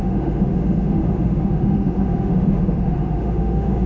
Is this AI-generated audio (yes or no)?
yes